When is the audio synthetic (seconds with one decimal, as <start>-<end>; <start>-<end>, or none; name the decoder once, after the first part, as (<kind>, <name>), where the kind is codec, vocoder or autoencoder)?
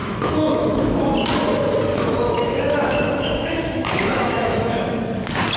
0.0-1.1 (autoencoder, DAC-VAE); 1.9-5.0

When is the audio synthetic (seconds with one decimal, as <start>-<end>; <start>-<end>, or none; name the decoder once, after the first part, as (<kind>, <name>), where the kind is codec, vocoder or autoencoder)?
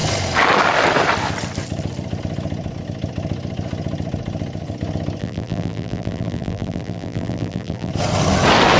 5.2-7.9 (vocoder, BigVGAN v2)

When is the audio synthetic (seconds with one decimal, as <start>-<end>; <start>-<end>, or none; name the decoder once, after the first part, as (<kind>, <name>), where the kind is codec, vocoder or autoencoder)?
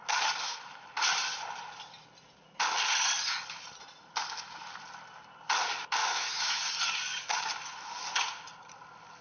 6.0-6.6 (autoencoder, DAC-VAE)